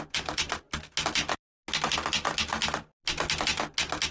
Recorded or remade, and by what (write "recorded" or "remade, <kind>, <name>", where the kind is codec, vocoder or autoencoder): recorded